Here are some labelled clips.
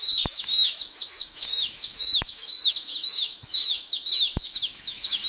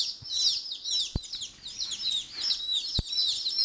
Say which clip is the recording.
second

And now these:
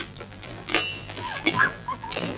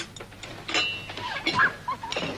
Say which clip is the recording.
second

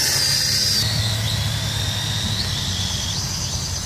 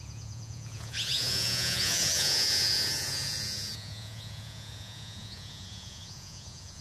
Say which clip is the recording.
first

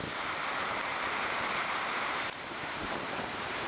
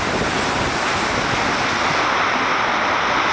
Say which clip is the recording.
second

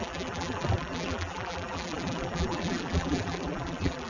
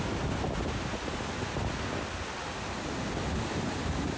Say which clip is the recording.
second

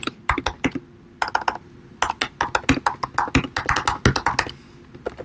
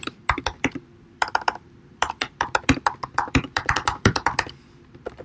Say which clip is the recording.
first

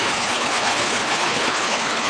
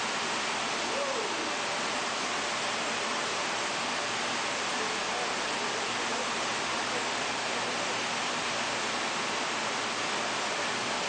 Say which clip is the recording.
second